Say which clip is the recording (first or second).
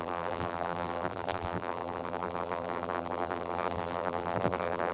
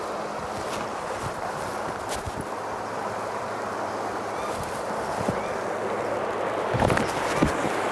second